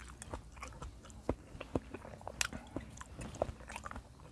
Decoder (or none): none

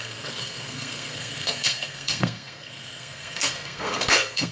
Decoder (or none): codec, SNAC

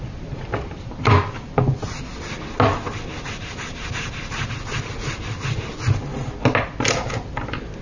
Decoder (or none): none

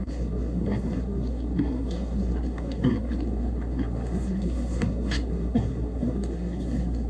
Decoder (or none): codec, SNAC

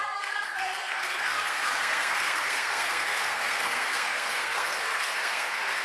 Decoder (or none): codec, SNAC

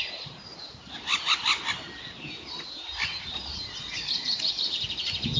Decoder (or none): none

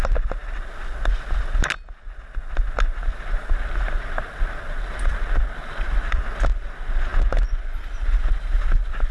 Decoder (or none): none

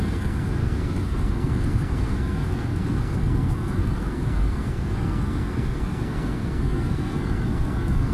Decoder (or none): codec, SNAC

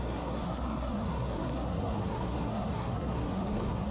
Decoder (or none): codec, SNAC